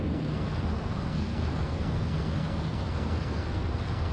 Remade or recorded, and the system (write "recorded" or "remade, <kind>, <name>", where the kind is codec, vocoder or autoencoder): remade, codec, SNAC